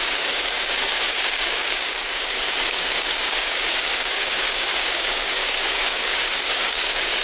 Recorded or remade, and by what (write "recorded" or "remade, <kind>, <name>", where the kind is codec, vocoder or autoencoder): remade, codec, DAC